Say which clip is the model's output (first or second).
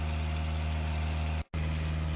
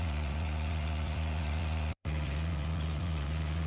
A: second